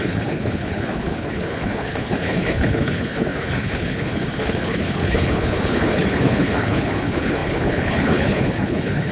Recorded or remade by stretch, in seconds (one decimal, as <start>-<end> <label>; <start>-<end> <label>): 0.0-9.1 remade